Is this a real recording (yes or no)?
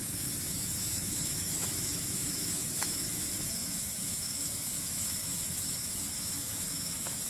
no